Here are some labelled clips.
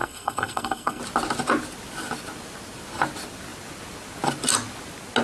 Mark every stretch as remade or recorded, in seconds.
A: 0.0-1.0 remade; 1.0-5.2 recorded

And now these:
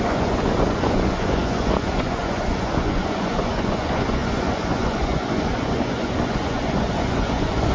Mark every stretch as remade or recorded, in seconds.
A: 0.0-7.7 remade

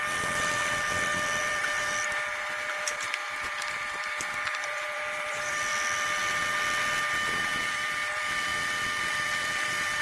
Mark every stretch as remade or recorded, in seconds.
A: 0.0-5.7 remade; 5.7-7.4 recorded; 7.4-8.5 remade; 8.5-9.0 recorded; 9.0-10.0 remade

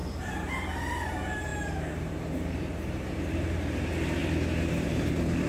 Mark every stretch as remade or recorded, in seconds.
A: 0.0-4.2 remade; 4.2-4.7 recorded; 4.7-5.5 remade